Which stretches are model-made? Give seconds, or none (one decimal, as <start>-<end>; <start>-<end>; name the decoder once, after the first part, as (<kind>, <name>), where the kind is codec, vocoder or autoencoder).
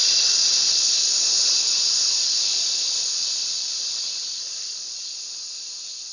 none